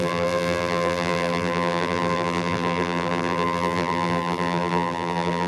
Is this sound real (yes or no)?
no